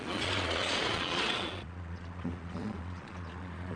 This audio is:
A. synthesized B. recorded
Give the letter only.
A